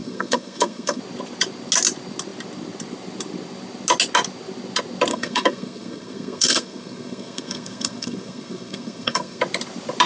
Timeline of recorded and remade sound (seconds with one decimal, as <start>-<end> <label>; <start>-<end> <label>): 0.0-1.0 remade; 1.0-5.1 recorded; 5.1-9.4 remade; 9.4-10.1 recorded